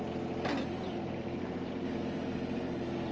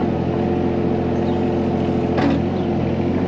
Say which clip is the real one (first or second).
second